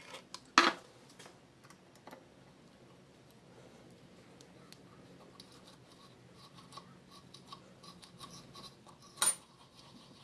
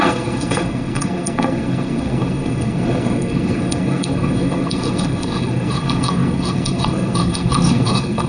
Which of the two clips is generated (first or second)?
second